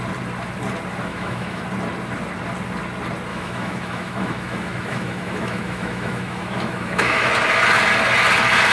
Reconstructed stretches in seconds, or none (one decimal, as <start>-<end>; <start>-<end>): 1.1-1.6; 3.3-7.3